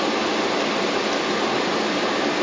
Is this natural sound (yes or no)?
yes